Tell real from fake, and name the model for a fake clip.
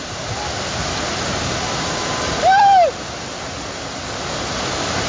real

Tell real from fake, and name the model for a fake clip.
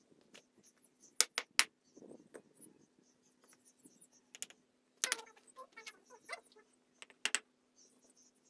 real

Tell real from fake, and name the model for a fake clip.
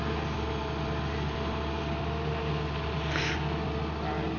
real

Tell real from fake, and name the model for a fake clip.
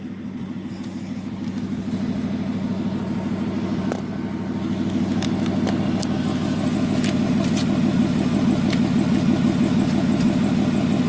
real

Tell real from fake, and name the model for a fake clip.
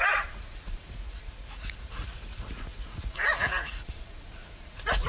fake, vocoder, Vocos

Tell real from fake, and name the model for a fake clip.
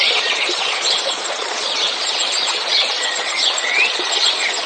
fake, vocoder, Vocos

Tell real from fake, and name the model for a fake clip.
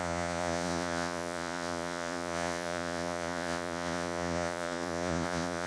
fake, vocoder, Vocos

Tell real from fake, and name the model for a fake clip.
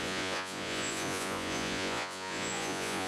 fake, vocoder, Vocos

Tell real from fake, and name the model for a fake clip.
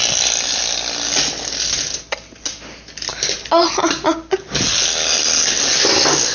real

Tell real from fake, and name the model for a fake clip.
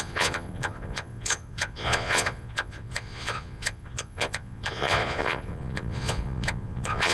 fake, vocoder, Vocos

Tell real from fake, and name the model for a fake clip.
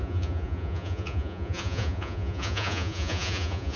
fake, vocoder, Vocos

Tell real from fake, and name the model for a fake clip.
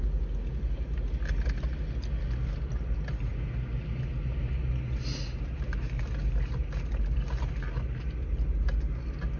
real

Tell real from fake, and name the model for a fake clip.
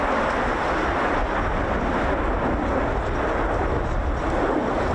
real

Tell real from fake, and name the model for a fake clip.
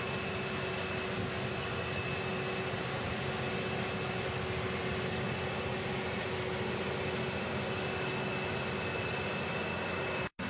real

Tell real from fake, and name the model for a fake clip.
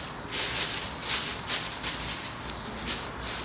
real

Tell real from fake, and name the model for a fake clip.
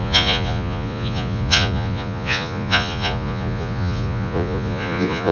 fake, vocoder, Vocos